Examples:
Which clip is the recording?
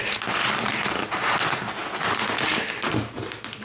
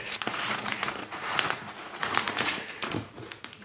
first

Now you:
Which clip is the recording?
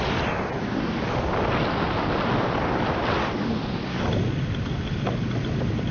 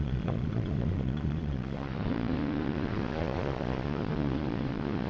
first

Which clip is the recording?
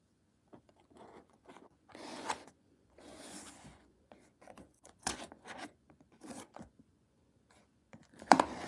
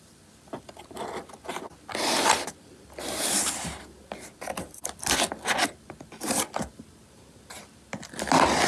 second